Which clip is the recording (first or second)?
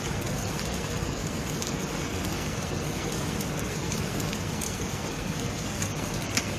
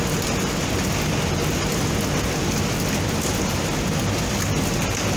second